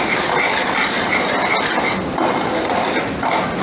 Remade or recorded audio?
recorded